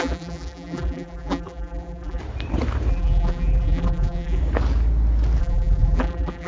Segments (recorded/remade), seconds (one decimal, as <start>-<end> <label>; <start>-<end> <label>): 0.0-2.2 remade; 2.2-2.9 recorded; 2.9-4.4 remade; 4.4-5.4 recorded; 5.4-6.5 remade